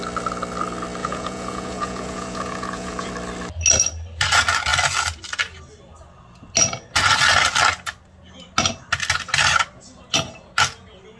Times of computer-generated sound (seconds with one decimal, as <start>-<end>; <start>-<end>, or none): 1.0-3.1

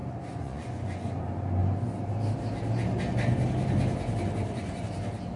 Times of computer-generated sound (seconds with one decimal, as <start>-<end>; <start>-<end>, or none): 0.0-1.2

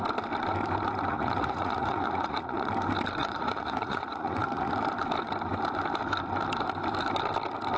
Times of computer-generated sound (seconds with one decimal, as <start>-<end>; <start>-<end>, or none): 1.1-2.7; 3.2-4.7

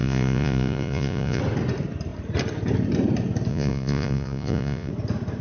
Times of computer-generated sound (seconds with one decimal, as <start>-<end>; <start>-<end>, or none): 0.0-1.4; 3.5-4.9

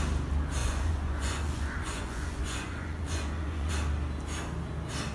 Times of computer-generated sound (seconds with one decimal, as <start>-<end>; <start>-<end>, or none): 0.6-3.7

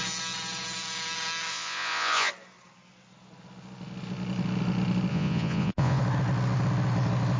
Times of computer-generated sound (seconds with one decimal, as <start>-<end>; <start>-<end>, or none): 1.5-2.3; 5.1-6.0